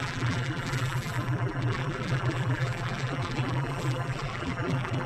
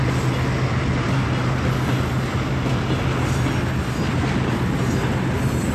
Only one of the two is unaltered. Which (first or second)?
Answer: second